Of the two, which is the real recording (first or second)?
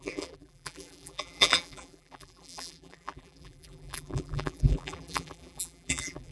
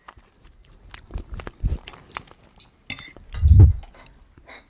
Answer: second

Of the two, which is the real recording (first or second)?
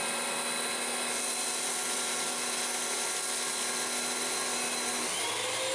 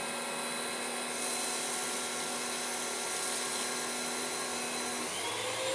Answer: second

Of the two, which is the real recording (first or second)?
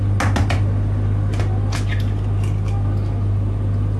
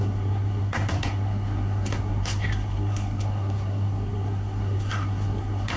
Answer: first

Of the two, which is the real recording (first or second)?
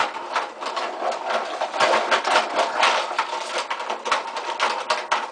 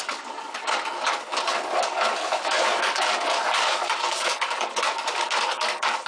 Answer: first